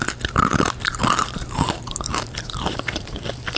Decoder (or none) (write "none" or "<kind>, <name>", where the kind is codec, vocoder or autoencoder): vocoder, BigVGAN v2